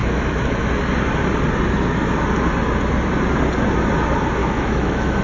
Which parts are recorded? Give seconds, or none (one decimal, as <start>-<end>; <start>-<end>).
0.7-4.4

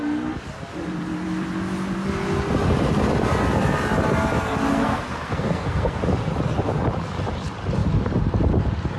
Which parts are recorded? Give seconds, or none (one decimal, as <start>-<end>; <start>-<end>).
0.0-4.7; 6.0-9.0

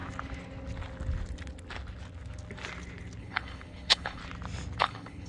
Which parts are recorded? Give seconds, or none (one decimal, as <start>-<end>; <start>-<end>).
0.0-3.2; 4.2-4.8